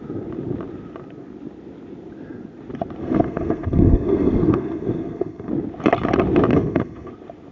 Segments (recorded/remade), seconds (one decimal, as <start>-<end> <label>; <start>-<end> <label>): 0.0-3.0 recorded; 3.0-5.5 remade; 5.5-6.5 recorded; 6.5-7.1 remade; 7.1-7.5 recorded